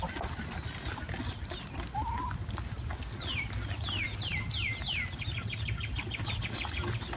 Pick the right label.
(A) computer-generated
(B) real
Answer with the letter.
B